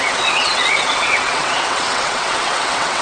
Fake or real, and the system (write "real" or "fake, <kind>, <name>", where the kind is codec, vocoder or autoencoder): fake, vocoder, WaveNeXt